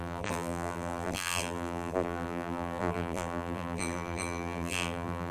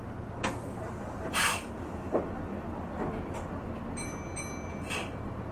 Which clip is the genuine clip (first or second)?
second